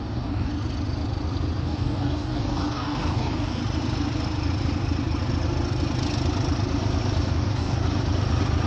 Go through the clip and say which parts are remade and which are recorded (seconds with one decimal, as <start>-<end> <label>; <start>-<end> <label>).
0.0-0.5 remade; 0.5-1.6 recorded; 1.6-3.6 remade; 3.6-7.3 recorded; 7.3-7.8 remade; 7.8-8.7 recorded